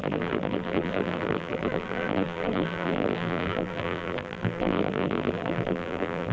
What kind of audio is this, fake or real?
fake